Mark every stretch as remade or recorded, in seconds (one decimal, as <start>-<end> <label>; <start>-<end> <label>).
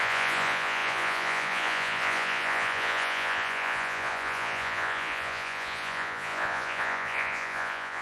0.0-8.0 remade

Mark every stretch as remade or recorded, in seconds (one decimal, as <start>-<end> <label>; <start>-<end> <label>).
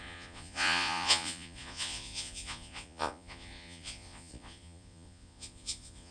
0.0-6.1 remade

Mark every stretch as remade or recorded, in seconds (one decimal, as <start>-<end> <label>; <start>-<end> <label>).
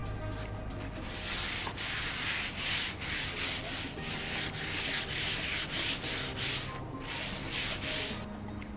0.0-8.8 recorded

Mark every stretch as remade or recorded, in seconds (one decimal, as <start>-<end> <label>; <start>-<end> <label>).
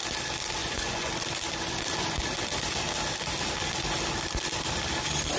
0.0-0.6 recorded; 0.6-1.1 remade; 1.1-5.4 recorded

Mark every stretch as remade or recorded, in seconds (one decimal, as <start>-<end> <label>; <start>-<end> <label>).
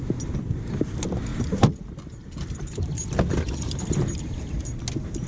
0.0-5.3 recorded